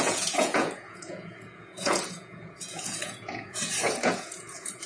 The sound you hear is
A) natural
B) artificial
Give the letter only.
B